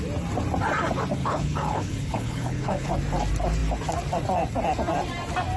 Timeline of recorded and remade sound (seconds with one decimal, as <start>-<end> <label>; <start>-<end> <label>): 0.0-1.2 recorded; 1.2-2.9 remade; 2.9-5.6 recorded